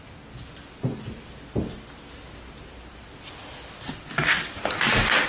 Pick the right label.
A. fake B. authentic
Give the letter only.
B